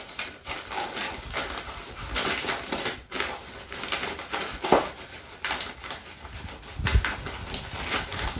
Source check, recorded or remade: recorded